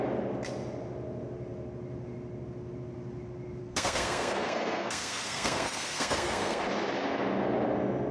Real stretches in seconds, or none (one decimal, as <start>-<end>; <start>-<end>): 0.0-3.6; 6.6-8.1